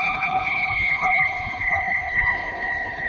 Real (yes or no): no